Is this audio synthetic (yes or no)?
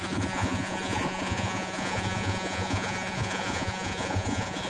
yes